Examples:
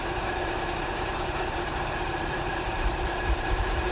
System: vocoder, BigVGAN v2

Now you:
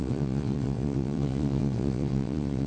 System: vocoder, WaveNeXt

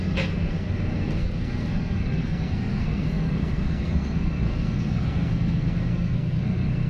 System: codec, SNAC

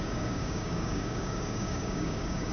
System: codec, DAC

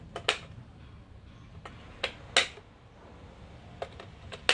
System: none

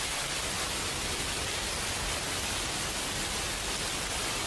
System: none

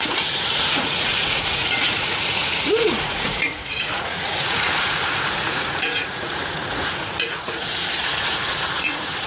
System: vocoder, Vocos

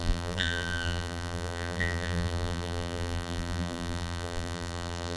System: vocoder, BigVGAN v2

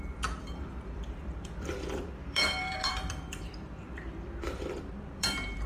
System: vocoder, BigVGAN v2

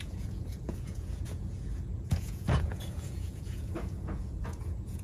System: vocoder, Vocos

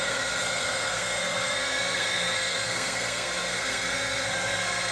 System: codec, SNAC